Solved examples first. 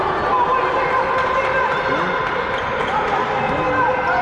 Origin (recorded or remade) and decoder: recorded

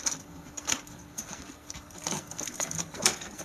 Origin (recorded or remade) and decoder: remade, codec, SNAC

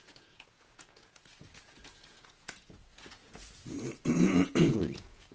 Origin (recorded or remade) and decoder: remade, vocoder, Vocos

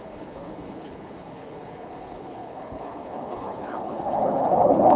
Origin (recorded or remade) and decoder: remade, codec, HILCodec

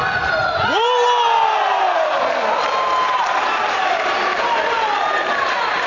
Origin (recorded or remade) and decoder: recorded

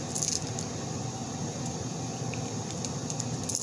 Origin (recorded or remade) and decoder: recorded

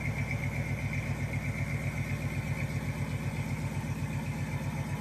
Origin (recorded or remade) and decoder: recorded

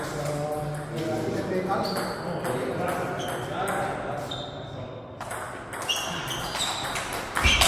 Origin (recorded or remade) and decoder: recorded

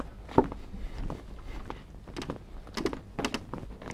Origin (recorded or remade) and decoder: recorded